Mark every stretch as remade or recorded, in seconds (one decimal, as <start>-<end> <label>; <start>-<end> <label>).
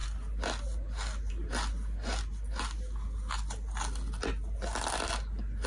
0.0-5.7 recorded